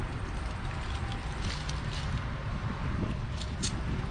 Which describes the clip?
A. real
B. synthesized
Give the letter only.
B